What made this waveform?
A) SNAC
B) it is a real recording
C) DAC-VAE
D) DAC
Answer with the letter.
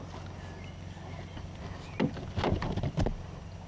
B